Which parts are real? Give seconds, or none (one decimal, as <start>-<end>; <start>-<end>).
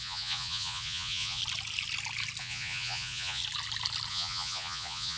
1.4-2.4; 3.4-4.1